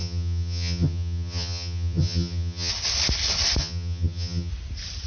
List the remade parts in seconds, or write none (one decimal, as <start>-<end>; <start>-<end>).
0.0-2.7; 3.6-4.5